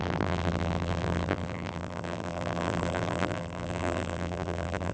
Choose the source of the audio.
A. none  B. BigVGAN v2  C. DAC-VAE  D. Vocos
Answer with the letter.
B